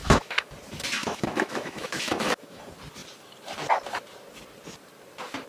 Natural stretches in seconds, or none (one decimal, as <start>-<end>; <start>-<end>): 0.5-1.0; 2.6-5.5